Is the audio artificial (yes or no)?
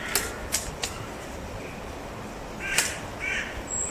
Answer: no